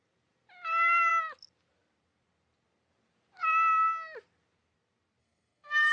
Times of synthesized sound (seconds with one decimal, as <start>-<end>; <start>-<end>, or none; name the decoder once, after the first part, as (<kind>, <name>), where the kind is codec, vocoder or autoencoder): 5.2-5.9 (codec, SNAC)